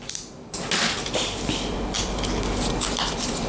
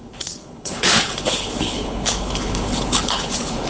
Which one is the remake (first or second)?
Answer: second